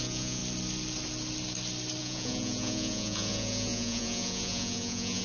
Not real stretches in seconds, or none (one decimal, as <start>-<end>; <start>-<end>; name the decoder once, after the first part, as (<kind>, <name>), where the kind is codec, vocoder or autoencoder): 0.0-0.4 (vocoder, Vocos); 2.0-5.2